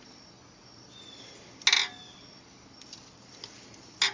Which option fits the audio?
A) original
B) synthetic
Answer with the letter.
A